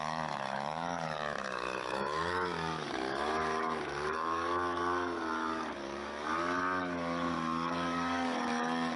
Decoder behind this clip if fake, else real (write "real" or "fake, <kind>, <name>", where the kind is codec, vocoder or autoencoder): fake, codec, DAC